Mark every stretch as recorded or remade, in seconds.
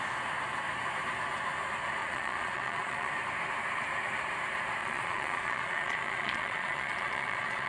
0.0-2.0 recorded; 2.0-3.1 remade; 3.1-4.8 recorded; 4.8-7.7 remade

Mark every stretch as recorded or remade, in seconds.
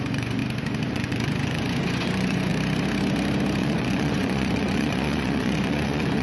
0.0-0.4 remade; 0.4-0.9 recorded; 0.9-2.5 remade; 2.5-3.6 recorded; 3.6-6.2 remade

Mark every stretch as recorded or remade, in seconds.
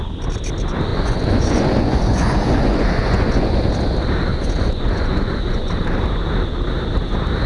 0.0-0.9 recorded; 0.9-3.7 remade; 3.7-4.3 recorded; 4.3-5.7 remade; 5.7-7.5 recorded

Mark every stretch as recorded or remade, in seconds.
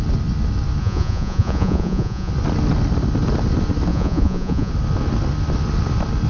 0.0-0.8 recorded; 0.8-2.3 remade; 2.3-3.9 recorded; 3.9-4.7 remade; 4.7-6.3 recorded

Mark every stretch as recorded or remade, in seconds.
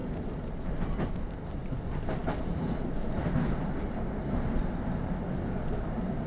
0.0-6.3 recorded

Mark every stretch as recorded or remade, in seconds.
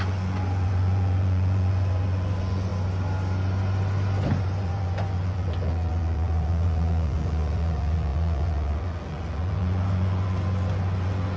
0.0-2.7 remade; 2.7-4.4 recorded; 4.4-11.4 remade